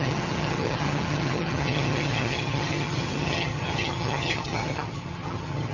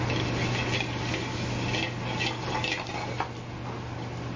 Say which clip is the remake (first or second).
first